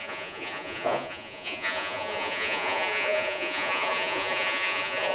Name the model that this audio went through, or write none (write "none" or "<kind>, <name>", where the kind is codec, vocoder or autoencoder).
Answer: vocoder, Vocos